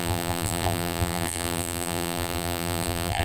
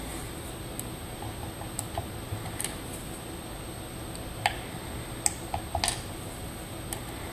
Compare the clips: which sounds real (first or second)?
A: second